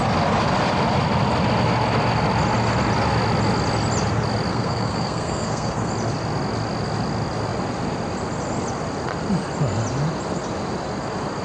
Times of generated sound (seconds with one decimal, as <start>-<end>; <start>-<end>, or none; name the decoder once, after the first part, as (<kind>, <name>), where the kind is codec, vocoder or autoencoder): 4.5-5.9 (codec, SNAC)